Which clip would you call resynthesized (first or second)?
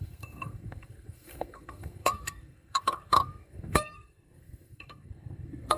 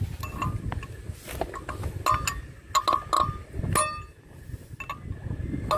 first